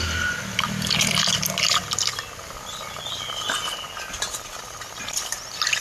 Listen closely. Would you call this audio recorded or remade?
recorded